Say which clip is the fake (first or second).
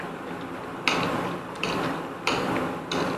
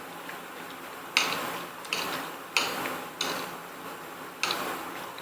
first